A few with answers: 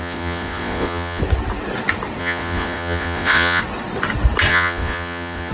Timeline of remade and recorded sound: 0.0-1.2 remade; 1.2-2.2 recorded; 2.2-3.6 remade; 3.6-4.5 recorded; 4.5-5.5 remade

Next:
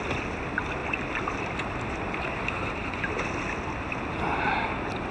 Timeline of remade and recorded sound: 0.0-0.8 recorded; 0.8-1.4 remade; 1.4-5.1 recorded

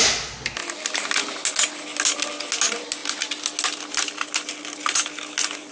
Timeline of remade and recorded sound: 0.0-5.7 recorded

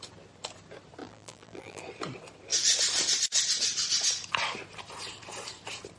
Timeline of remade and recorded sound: 0.0-1.0 recorded; 1.0-1.8 remade; 1.8-6.0 recorded

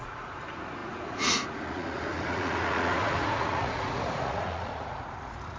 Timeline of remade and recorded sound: 0.0-5.6 remade